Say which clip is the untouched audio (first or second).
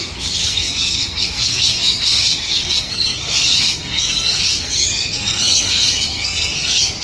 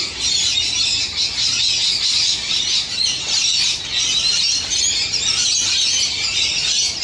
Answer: second